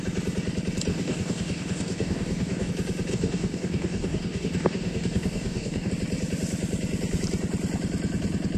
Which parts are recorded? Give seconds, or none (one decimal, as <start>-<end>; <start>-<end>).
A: 0.0-0.9; 2.7-3.1; 5.9-8.6